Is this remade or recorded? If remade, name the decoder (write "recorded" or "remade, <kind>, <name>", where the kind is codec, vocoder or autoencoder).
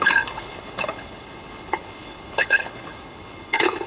remade, codec, HILCodec